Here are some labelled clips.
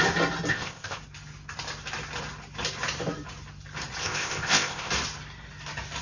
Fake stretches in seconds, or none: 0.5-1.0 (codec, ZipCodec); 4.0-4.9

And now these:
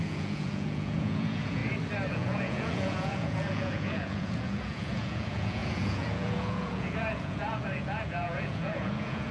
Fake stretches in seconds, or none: 0.0-1.6 (vocoder, Vocos); 2.1-9.3

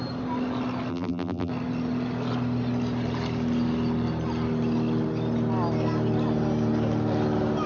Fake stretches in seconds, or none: 0.9-1.5 (vocoder, BigVGAN v2)

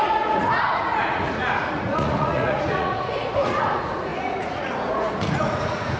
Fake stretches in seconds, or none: 0.0-6.0 (vocoder, Vocos)

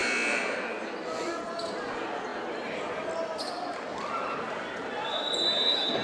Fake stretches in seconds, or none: none

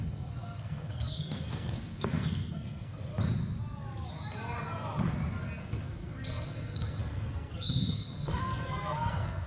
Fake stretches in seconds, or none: 0.0-3.1 (codec, SNAC); 5.6-9.5

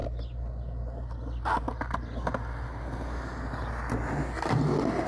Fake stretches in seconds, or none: none